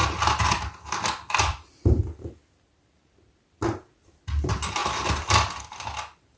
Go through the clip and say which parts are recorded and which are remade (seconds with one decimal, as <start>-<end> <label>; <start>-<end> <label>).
0.0-6.4 recorded